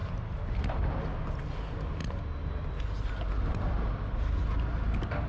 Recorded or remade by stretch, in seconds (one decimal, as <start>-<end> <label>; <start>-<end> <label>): 0.0-5.3 recorded